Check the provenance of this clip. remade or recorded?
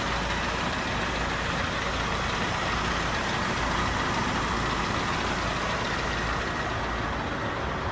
recorded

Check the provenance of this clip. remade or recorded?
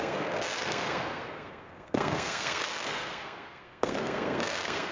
remade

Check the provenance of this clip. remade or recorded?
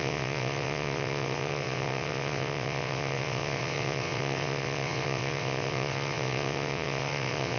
remade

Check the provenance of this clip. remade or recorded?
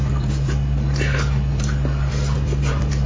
recorded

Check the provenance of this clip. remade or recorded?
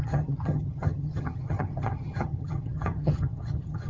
remade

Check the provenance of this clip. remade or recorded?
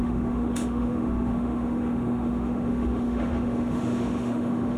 remade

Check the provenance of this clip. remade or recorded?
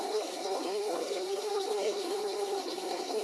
remade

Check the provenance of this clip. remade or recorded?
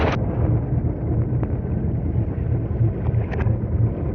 recorded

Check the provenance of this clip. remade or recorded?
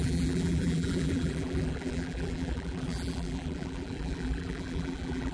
remade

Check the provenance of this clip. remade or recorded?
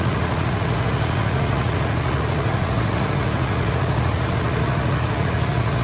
remade